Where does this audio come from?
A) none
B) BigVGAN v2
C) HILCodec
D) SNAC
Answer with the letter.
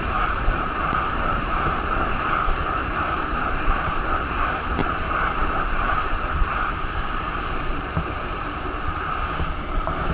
B